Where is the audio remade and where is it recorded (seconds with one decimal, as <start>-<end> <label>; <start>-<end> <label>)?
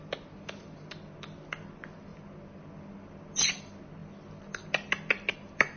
0.0-5.8 recorded